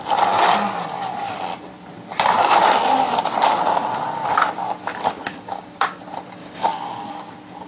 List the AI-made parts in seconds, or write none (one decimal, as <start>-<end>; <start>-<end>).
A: 5.3-6.0; 6.4-7.3